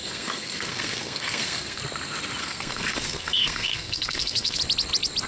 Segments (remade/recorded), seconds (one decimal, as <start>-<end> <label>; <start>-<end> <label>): 0.0-1.8 remade; 1.8-2.4 recorded; 2.4-4.6 remade; 4.6-5.3 recorded